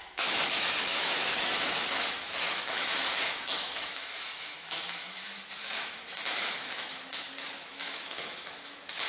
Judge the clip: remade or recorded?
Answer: remade